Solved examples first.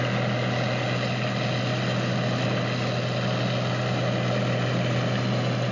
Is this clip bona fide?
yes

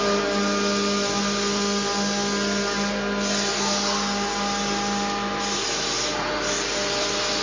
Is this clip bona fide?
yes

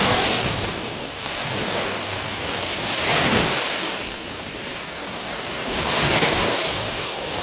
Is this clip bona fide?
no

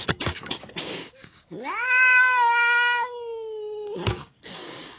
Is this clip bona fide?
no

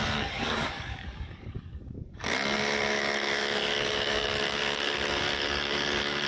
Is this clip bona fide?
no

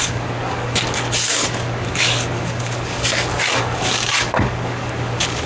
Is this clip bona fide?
no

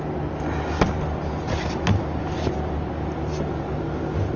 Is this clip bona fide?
yes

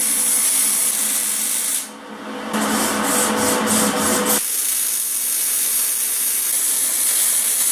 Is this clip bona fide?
yes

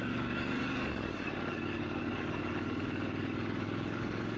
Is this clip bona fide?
no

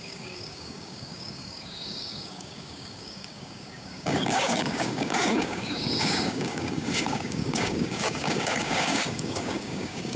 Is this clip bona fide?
no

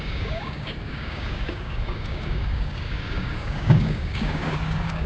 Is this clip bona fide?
no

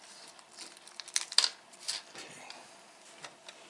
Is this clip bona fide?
yes